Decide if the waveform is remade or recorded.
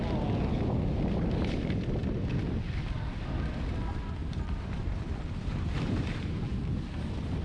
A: recorded